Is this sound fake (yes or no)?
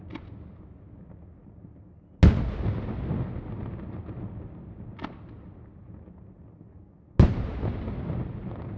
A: no